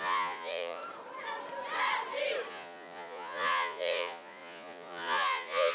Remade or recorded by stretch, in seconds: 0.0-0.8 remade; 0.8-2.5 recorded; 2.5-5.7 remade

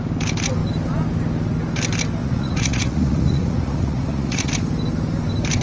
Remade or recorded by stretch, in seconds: 0.0-2.2 recorded; 2.2-4.5 remade; 4.5-5.6 recorded

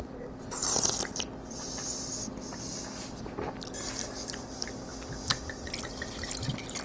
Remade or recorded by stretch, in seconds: 0.0-6.8 recorded

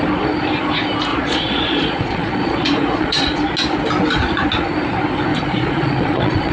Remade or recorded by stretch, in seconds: 0.0-1.1 recorded; 1.1-3.4 remade; 3.4-5.3 recorded; 5.3-6.5 remade

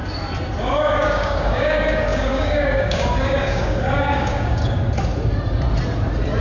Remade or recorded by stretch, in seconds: 0.0-0.6 recorded; 0.6-4.6 remade; 4.6-6.4 recorded

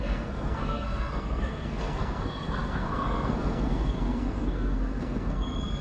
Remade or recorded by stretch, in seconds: 0.0-5.8 remade

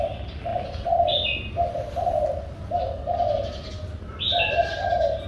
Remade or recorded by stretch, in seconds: 0.0-5.3 recorded